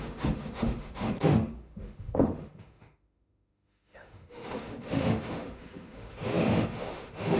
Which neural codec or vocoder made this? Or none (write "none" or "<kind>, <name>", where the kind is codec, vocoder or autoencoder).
autoencoder, DAC-VAE